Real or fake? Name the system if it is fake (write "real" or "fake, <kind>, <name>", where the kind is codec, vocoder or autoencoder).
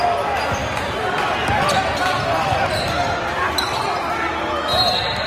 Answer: real